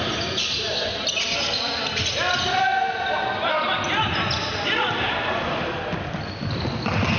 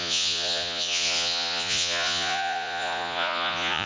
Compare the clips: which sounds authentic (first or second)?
first